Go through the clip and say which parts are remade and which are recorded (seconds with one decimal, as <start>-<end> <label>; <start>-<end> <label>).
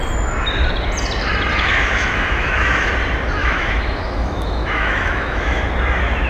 0.0-1.5 recorded; 1.5-2.9 remade; 2.9-3.4 recorded; 3.4-5.6 remade; 5.6-6.3 recorded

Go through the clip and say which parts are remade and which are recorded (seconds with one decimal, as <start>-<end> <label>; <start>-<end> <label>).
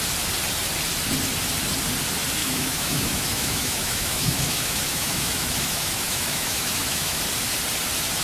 0.0-2.4 recorded; 2.4-7.2 remade; 7.2-8.2 recorded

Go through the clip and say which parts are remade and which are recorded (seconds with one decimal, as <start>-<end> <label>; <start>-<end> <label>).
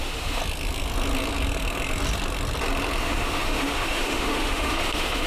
0.0-0.4 remade; 0.4-3.0 recorded; 3.0-5.3 remade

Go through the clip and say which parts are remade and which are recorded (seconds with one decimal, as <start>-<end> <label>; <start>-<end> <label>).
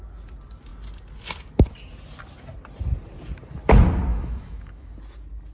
0.0-4.1 recorded; 4.1-4.9 remade; 4.9-5.5 recorded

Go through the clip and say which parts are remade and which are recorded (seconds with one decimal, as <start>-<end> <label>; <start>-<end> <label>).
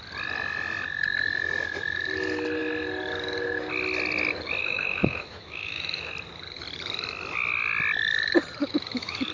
0.0-4.6 recorded; 4.6-6.1 remade; 6.1-8.6 recorded; 8.6-9.3 remade